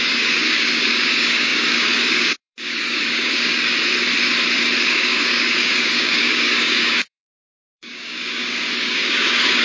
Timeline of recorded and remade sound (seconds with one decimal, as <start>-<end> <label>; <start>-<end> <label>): 0.0-3.9 remade; 3.9-4.8 recorded; 4.8-9.6 remade